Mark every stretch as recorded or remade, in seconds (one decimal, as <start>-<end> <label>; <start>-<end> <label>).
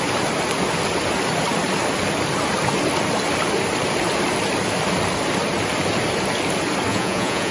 0.0-6.9 recorded; 6.9-7.5 remade